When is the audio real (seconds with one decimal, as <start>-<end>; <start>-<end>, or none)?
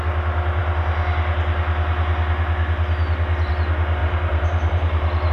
0.0-4.0